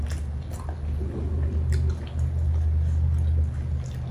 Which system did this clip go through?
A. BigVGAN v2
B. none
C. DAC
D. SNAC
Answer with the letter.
B